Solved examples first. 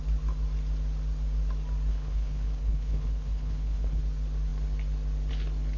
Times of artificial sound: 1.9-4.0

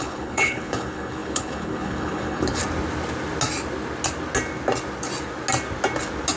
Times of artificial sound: 0.0-2.6